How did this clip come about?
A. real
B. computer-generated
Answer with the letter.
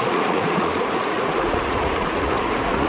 B